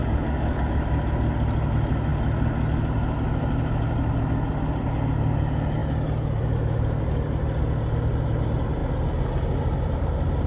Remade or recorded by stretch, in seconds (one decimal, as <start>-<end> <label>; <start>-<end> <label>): 0.0-0.6 remade; 0.6-10.5 recorded